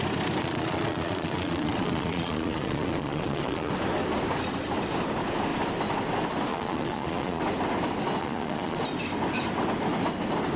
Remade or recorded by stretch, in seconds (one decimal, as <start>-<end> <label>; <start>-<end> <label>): 0.0-0.4 recorded; 0.4-3.7 remade; 3.7-6.5 recorded; 6.5-7.4 remade; 7.4-8.2 recorded; 8.2-8.8 remade; 8.8-10.6 recorded